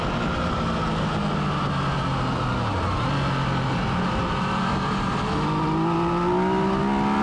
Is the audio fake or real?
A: real